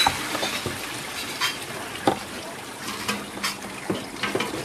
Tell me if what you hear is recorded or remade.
recorded